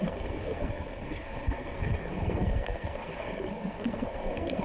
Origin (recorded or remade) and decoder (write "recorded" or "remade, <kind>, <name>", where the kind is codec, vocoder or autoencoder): remade, codec, SNAC